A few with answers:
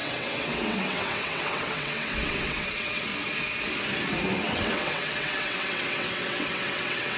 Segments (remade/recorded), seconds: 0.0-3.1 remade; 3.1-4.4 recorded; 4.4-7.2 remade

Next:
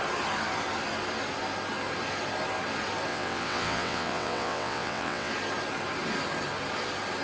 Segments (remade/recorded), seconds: 0.0-3.1 recorded; 3.1-5.3 remade; 5.3-7.2 recorded

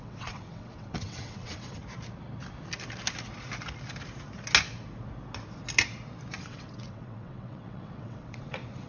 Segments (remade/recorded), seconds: 0.0-1.8 remade; 1.8-6.4 recorded; 6.4-8.9 remade

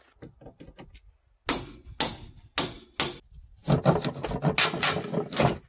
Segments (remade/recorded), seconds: 0.0-5.7 recorded